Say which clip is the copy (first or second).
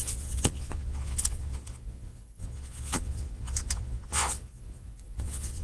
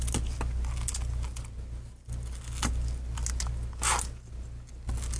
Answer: first